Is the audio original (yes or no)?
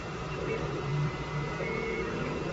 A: no